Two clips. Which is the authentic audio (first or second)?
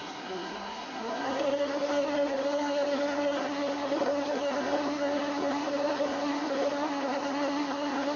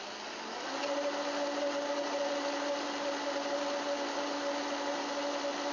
second